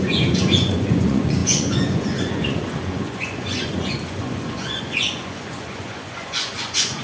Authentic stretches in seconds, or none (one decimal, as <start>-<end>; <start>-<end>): none